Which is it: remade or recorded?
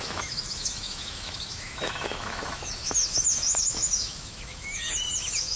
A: remade